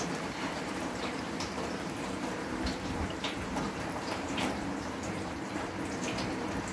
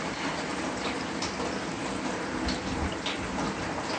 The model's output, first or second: first